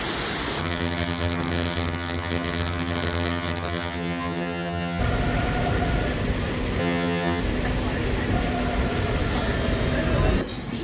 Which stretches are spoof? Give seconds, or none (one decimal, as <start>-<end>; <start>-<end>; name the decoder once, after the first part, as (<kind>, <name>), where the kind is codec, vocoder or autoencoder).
0.6-5.0 (vocoder, HiFi-GAN); 6.8-7.4